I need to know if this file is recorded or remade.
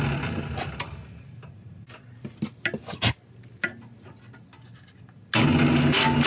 recorded